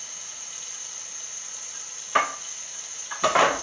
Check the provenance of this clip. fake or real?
real